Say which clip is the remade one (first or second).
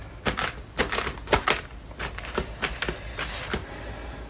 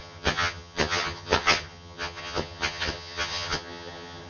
second